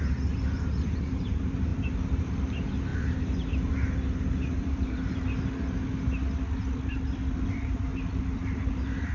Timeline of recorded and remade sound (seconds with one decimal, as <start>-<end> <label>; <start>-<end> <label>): 0.0-5.8 remade; 5.8-7.3 recorded; 7.3-7.9 remade; 7.9-8.7 recorded; 8.7-9.1 remade

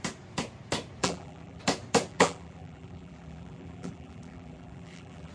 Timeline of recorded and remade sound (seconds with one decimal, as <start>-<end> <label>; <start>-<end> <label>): 0.0-1.0 recorded; 1.0-1.6 remade; 1.6-2.1 recorded; 2.1-5.3 remade

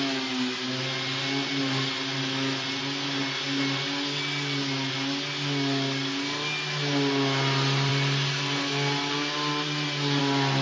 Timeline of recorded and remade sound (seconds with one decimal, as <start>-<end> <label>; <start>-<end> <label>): 0.0-10.6 recorded

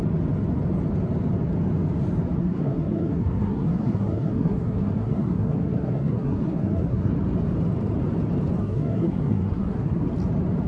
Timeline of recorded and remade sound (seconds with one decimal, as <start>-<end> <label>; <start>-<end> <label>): 0.0-2.4 recorded; 2.4-7.1 remade; 7.1-8.6 recorded; 8.6-10.1 remade; 10.1-10.7 recorded

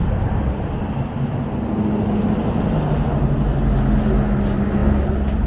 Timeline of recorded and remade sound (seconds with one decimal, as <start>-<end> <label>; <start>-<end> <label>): 0.0-5.5 recorded

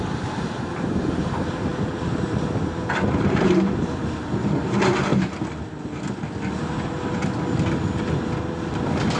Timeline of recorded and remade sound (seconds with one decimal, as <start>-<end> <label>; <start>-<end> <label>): 0.0-5.1 remade; 5.1-9.2 recorded